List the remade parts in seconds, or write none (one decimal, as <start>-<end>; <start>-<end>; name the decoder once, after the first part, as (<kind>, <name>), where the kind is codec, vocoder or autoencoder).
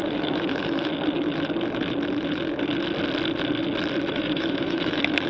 0.0-0.9 (autoencoder, DAC-VAE); 4.1-5.3